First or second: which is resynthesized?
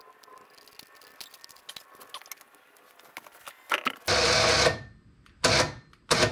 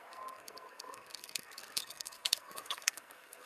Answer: second